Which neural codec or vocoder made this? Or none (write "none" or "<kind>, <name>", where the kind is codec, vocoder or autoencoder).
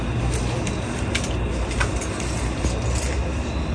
none